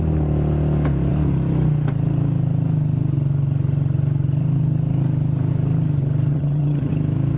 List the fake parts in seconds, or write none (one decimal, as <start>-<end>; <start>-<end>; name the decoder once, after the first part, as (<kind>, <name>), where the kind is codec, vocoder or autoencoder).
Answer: 6.3-6.9 (vocoder, HiFi-GAN)